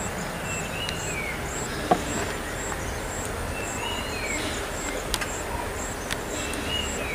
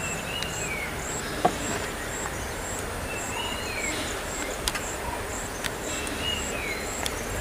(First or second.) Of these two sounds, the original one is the first